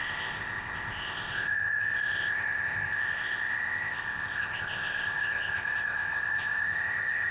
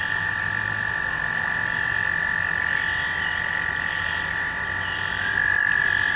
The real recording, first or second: second